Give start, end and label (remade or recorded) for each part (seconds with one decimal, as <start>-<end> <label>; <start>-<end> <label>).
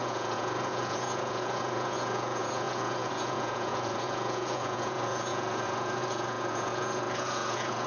0.0-7.9 remade